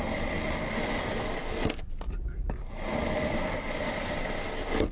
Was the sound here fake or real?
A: real